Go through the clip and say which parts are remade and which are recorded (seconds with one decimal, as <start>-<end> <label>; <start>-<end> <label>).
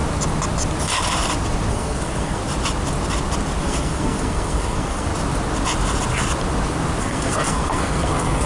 0.0-1.7 recorded; 1.7-2.4 remade; 2.4-3.6 recorded; 3.6-5.1 remade; 5.1-7.0 recorded; 7.0-8.5 remade